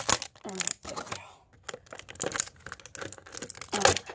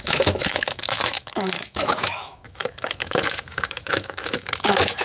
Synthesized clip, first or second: second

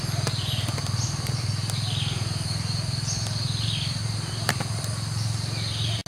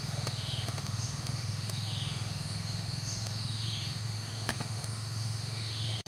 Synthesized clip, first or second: second